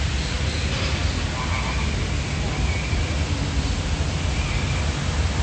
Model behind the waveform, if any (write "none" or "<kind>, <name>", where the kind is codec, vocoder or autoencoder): none